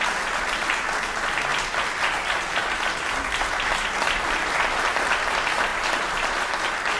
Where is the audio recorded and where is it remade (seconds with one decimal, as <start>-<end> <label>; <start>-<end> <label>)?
0.0-5.7 recorded; 5.7-6.5 remade; 6.5-7.0 recorded